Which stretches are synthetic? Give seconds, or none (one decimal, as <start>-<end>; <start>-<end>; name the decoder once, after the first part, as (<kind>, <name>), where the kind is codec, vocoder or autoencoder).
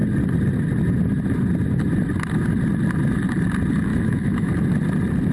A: 3.9-4.5 (autoencoder, DAC-VAE)